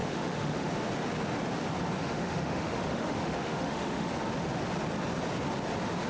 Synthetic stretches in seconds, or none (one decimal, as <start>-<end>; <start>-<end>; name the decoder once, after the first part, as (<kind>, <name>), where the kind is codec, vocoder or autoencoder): 0.0-0.7 (autoencoder, DAC-VAE); 2.0-4.1